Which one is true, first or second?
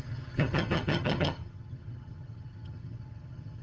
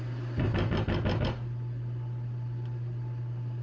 second